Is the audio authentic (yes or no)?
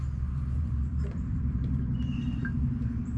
no